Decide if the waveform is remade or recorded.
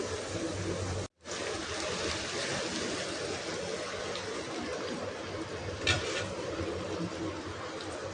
recorded